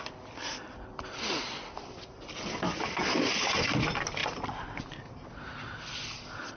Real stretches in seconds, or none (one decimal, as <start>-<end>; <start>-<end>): 0.0-4.2; 4.9-6.6